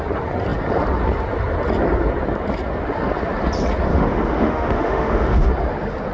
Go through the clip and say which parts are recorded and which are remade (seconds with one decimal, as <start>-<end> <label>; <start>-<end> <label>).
0.0-3.9 recorded; 3.9-5.5 remade; 5.5-6.1 recorded